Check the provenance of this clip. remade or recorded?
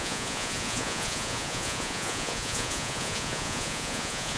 remade